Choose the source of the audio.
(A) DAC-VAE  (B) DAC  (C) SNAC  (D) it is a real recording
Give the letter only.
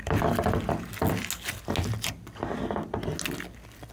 D